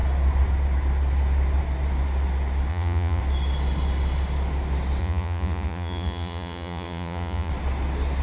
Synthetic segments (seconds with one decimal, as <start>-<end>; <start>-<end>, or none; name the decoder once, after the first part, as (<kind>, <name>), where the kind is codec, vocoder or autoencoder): 2.7-3.2 (vocoder, Vocos); 5.0-7.5